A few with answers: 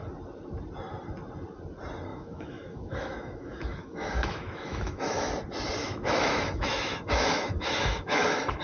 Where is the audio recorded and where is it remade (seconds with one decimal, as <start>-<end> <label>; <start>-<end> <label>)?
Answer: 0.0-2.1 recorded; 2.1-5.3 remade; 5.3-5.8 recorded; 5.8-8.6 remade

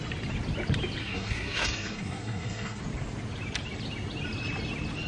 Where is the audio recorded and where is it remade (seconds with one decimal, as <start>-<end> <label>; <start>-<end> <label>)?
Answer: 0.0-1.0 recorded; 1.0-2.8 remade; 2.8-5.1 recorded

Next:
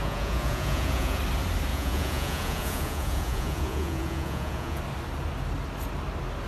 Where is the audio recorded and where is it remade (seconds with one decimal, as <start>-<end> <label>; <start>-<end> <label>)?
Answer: 0.0-1.2 remade; 1.2-1.7 recorded; 1.7-4.8 remade; 4.8-6.5 recorded

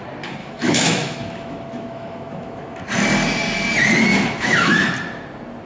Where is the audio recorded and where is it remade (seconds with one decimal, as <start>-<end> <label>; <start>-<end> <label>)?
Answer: 0.0-0.4 recorded; 0.4-2.8 remade; 2.8-4.1 recorded; 4.1-4.8 remade; 4.8-5.7 recorded

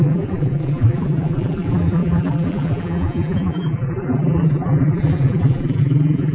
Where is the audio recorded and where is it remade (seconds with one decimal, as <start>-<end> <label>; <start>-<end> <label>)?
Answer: 0.0-6.3 remade